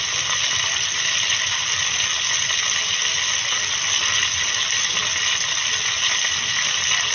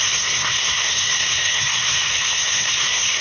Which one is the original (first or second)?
first